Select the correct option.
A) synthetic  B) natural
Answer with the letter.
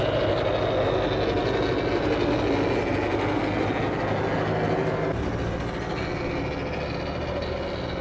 B